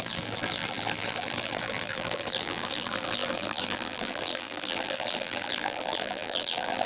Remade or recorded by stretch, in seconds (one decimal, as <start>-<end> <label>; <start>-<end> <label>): 0.0-6.9 remade